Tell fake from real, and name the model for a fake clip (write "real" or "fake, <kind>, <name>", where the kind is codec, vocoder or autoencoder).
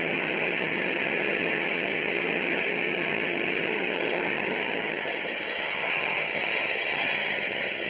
fake, vocoder, HiFi-GAN